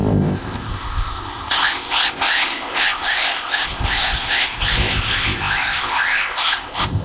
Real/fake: fake